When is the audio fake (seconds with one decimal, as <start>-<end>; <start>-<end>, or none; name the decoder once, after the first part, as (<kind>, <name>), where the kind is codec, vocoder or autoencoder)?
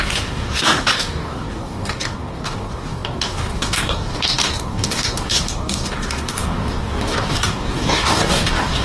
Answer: 0.0-8.8 (codec, DAC)